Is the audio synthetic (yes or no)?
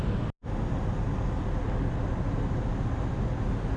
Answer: no